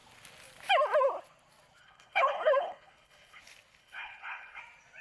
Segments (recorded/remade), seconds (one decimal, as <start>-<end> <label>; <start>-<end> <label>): 0.0-1.8 recorded; 1.8-3.4 remade; 3.4-3.8 recorded; 3.8-4.6 remade; 4.6-5.0 recorded